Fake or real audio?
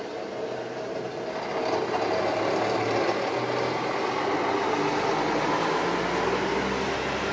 real